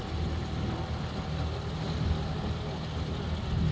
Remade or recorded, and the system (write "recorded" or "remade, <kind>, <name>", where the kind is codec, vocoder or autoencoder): recorded